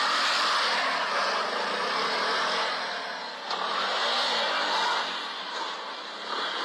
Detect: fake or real real